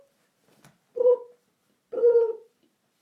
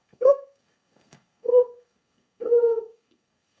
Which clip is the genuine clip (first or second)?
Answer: first